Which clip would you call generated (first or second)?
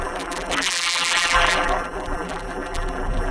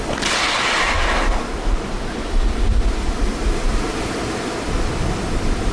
first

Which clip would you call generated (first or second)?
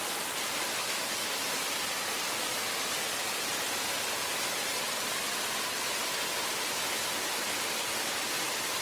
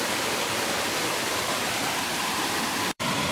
second